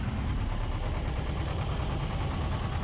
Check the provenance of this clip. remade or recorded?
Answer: recorded